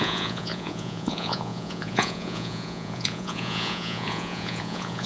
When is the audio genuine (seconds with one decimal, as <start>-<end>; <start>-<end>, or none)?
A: none